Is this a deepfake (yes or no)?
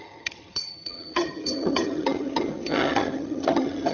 yes